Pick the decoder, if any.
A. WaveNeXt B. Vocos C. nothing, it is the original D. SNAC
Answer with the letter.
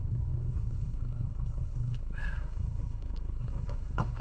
D